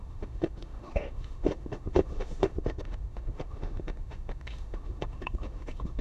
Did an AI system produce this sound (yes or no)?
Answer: yes